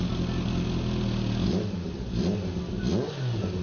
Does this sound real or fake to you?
real